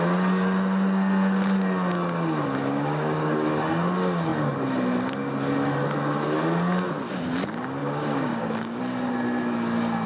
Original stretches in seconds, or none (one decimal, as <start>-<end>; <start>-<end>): 0.0-2.6; 3.5-7.8; 8.8-10.1